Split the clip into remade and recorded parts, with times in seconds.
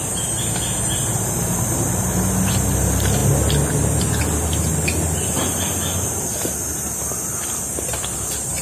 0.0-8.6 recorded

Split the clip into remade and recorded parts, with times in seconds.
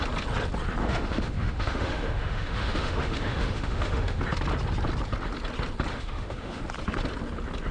0.0-0.8 recorded; 0.8-4.2 remade; 4.2-5.9 recorded; 5.9-6.6 remade; 6.6-7.7 recorded